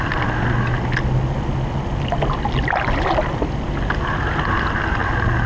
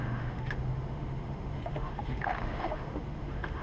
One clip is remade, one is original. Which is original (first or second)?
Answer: first